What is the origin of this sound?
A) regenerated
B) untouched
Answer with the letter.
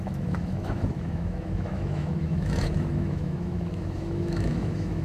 A